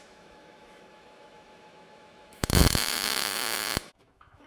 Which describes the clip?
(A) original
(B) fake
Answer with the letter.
B